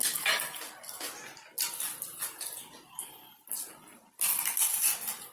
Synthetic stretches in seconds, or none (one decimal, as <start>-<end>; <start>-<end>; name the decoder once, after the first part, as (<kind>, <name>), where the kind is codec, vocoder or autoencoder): none